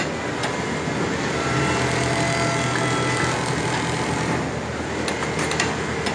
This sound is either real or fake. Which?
real